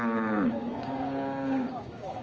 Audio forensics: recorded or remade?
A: remade